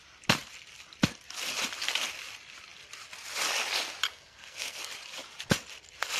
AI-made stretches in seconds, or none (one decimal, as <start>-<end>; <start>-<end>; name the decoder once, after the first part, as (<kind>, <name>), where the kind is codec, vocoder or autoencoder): 4.1-4.8 (codec, SNAC)